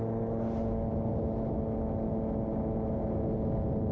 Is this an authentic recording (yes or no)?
yes